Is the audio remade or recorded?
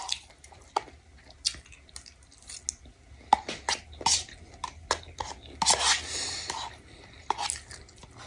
recorded